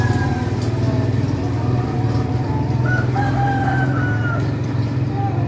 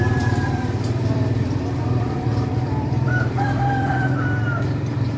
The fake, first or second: second